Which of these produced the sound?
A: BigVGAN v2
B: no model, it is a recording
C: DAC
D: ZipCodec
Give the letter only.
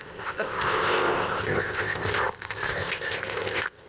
D